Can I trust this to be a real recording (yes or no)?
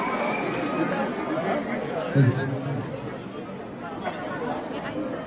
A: yes